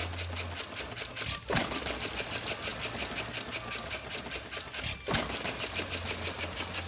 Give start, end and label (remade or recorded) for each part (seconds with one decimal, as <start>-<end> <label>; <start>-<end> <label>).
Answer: 0.0-6.9 recorded